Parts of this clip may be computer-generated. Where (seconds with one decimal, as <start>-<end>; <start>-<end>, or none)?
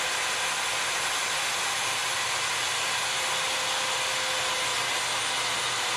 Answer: none